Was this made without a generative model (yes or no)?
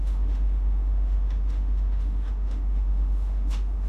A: no